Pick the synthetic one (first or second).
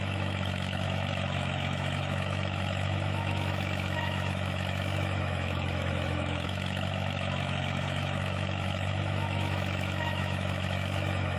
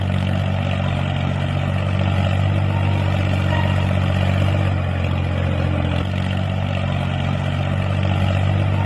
first